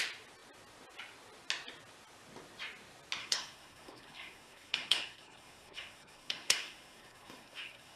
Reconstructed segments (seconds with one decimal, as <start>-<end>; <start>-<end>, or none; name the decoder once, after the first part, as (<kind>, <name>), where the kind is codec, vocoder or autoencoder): 3.2-8.0 (codec, SNAC)